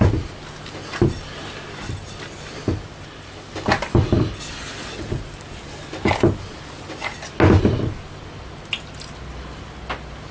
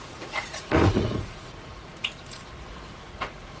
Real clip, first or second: first